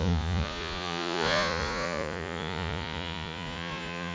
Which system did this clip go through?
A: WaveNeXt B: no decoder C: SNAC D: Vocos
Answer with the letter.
D